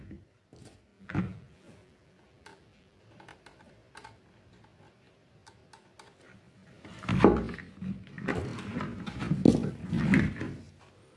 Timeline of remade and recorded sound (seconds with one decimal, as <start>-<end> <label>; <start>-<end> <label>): 0.0-0.9 recorded; 0.9-3.0 remade; 3.0-11.2 recorded